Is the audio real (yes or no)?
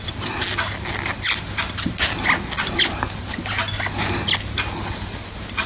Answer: yes